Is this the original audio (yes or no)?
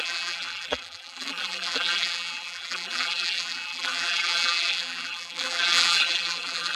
no